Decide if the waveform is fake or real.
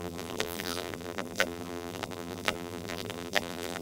fake